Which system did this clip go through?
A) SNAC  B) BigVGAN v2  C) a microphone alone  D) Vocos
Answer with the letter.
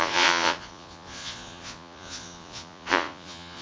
D